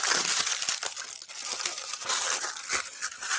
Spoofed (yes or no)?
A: no